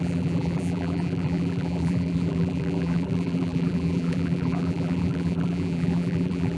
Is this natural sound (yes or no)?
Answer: no